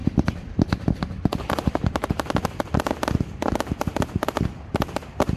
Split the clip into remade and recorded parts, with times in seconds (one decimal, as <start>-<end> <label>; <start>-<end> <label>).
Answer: 0.0-2.3 remade; 2.3-5.4 recorded